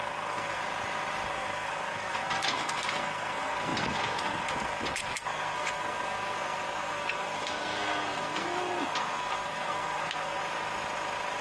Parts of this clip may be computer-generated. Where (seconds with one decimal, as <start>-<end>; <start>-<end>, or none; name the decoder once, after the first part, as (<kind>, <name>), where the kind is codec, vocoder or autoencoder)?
0.0-0.6 (codec, SNAC); 1.3-10.4